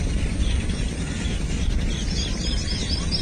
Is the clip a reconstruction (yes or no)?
no